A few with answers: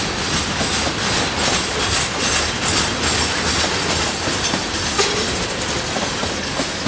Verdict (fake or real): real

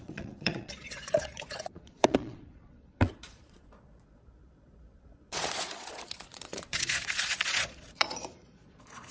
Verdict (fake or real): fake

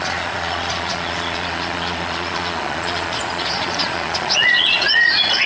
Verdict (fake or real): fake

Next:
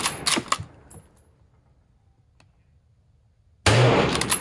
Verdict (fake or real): real